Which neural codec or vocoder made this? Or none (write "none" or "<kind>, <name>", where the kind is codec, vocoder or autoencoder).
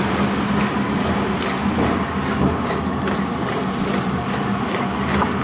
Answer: none